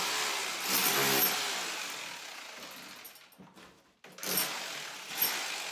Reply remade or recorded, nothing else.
recorded